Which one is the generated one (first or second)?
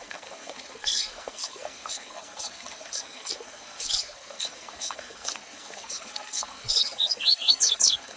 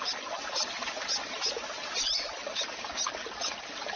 first